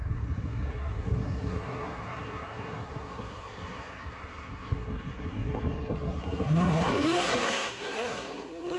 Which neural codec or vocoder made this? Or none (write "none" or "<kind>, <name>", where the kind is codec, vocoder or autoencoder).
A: codec, SNAC